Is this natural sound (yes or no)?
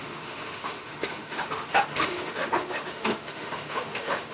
no